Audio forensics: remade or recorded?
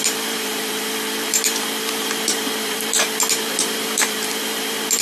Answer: remade